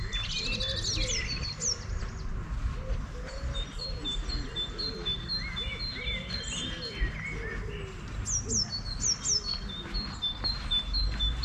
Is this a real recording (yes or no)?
yes